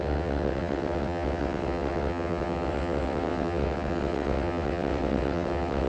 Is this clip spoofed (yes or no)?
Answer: yes